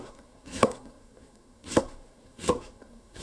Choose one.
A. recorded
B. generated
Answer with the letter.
B